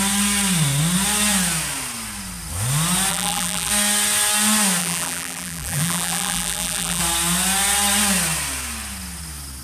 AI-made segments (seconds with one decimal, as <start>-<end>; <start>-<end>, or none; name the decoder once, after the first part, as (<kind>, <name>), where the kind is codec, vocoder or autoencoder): 3.1-3.7 (vocoder, BigVGAN v2); 4.8-7.0

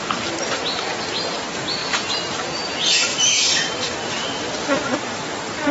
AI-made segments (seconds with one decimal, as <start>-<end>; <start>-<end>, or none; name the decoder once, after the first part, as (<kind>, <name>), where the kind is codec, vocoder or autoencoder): 1.8-2.5 (vocoder, BigVGAN v2); 3.1-4.9

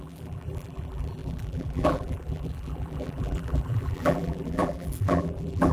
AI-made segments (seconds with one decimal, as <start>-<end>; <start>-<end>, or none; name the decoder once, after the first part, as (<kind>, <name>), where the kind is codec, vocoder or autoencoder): 0.0-5.7 (vocoder, BigVGAN v2)

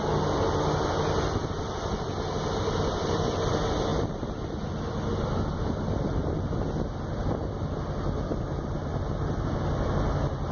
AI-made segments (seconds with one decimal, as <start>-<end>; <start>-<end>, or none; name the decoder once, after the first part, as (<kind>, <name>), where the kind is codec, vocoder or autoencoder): 3.9-4.9 (vocoder, BigVGAN v2)

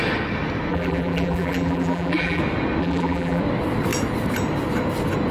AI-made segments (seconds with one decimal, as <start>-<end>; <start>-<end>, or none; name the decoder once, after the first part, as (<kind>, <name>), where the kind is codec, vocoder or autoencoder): 0.7-2.4 (vocoder, BigVGAN v2); 2.8-3.4

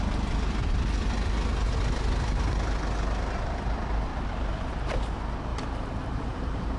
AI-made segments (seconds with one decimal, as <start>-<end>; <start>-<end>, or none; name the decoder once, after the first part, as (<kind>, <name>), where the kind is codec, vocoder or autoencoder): 4.1-4.8 (vocoder, BigVGAN v2); 5.5-6.8

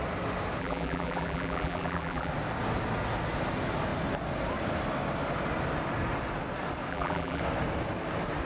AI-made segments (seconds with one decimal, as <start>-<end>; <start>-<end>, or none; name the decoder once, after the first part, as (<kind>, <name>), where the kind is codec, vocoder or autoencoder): 0.6-2.3 (vocoder, BigVGAN v2); 6.9-7.4

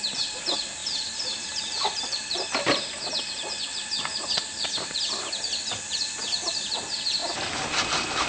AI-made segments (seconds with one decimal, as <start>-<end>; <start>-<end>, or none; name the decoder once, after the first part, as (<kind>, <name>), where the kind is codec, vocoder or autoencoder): 0.8-3.0 (vocoder, BigVGAN v2); 3.7-4.3